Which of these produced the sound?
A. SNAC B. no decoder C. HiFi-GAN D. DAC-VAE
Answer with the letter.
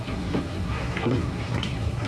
A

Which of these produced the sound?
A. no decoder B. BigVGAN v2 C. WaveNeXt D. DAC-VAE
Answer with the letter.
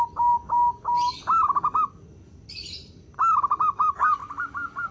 A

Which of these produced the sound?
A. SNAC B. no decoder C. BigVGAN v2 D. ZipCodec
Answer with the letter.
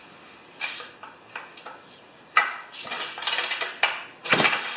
B